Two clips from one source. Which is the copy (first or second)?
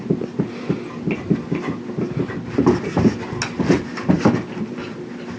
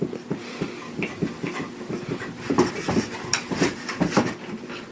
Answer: second